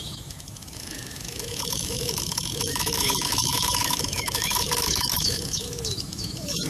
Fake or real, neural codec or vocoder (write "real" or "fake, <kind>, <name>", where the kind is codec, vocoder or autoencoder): fake, autoencoder, DAC-VAE